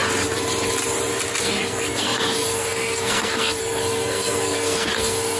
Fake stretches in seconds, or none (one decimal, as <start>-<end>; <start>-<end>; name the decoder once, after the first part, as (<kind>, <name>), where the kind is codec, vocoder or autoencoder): 1.4-5.4 (codec, SNAC)